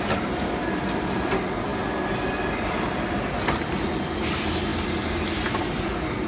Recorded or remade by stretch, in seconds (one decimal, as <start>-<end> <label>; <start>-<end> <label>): 0.0-6.3 recorded